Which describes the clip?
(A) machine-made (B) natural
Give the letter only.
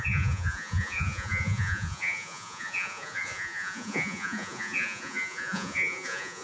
A